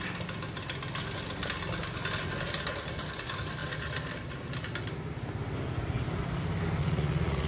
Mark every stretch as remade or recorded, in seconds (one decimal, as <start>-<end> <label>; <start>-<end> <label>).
0.0-6.8 recorded; 6.8-7.5 remade